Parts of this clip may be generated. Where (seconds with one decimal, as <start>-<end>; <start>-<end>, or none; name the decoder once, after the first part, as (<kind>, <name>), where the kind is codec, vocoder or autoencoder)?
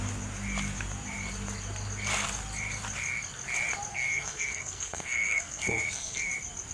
3.9-6.3 (codec, SNAC)